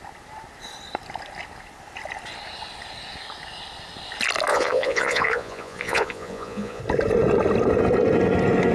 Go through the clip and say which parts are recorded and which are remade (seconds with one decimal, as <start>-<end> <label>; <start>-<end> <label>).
0.0-4.5 recorded; 4.5-6.8 remade; 6.8-8.7 recorded